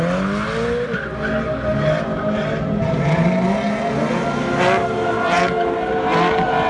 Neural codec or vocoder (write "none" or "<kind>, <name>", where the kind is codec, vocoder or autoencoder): none